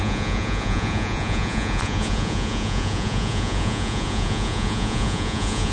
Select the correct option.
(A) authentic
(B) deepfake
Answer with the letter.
B